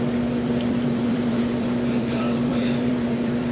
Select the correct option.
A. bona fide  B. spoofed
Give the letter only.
B